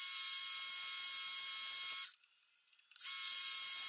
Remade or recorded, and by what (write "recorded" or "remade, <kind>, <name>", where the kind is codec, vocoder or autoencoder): recorded